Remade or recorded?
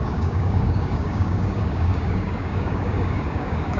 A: remade